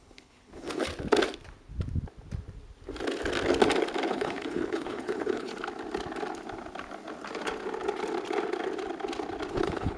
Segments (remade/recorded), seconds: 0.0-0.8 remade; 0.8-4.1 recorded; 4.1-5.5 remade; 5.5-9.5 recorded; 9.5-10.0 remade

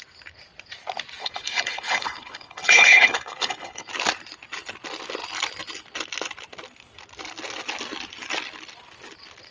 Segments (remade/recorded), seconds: 0.0-1.2 recorded; 1.2-3.9 remade; 3.9-9.5 recorded

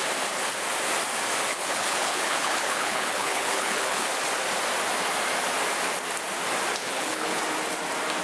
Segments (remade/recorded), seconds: 0.0-1.5 recorded; 1.5-4.1 remade; 4.1-6.8 recorded; 6.8-7.4 remade; 7.4-8.2 recorded

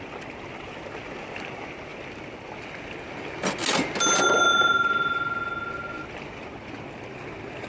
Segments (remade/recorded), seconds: 0.0-7.7 recorded

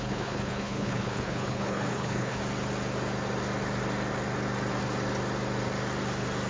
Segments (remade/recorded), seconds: 0.0-2.4 remade; 2.4-6.5 recorded

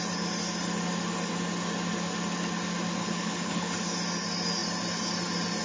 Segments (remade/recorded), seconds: 0.0-3.0 recorded; 3.0-3.7 remade; 3.7-5.6 recorded